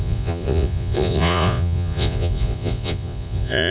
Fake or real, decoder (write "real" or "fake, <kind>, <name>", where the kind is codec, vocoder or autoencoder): fake, vocoder, Vocos